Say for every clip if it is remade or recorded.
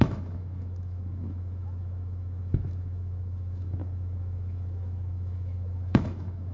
remade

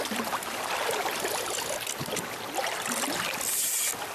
recorded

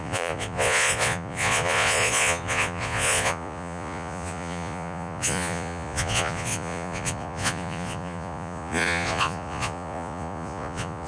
remade